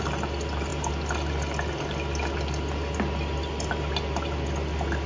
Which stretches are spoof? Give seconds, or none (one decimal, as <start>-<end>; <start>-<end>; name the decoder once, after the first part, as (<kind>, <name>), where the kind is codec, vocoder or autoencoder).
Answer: none